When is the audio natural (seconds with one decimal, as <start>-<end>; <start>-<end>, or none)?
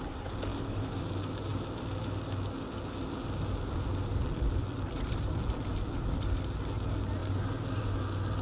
0.0-0.5; 1.0-8.4